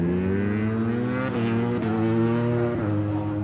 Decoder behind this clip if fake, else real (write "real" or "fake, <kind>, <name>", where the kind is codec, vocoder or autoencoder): real